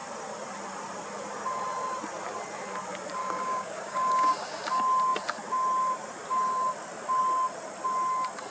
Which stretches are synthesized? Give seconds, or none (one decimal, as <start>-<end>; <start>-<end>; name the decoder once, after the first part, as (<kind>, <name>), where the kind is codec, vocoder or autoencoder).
3.2-4.3 (codec, DAC)